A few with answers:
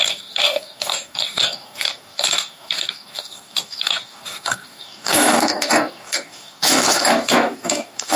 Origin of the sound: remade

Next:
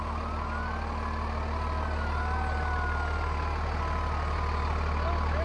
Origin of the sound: recorded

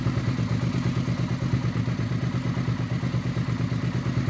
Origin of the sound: recorded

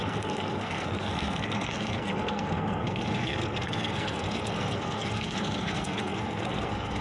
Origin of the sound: remade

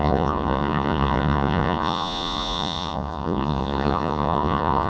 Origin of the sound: remade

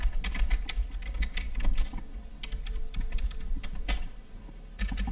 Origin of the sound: recorded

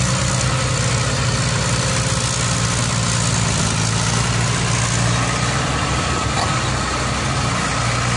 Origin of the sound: recorded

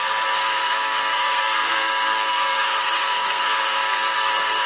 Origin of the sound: remade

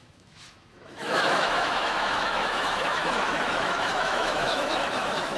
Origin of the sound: remade